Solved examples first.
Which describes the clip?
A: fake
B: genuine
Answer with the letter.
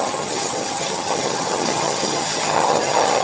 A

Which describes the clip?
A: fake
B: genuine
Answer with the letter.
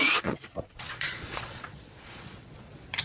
A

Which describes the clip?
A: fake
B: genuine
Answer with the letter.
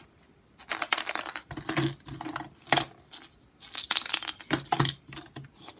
B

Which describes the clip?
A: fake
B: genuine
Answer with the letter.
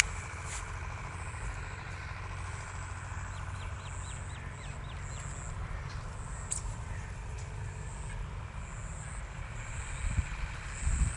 B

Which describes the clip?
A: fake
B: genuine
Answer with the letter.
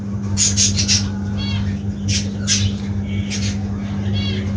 B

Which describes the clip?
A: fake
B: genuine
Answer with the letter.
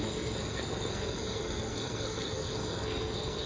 A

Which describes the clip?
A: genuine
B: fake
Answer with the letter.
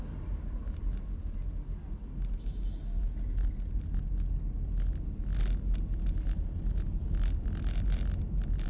A